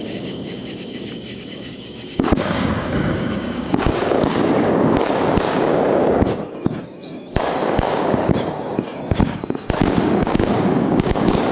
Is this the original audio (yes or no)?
no